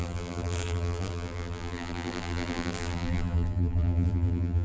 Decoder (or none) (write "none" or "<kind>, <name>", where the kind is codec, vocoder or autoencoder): vocoder, BigVGAN v2